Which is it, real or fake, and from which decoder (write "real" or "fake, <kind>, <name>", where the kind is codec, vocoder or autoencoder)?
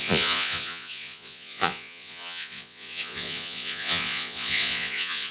fake, vocoder, Vocos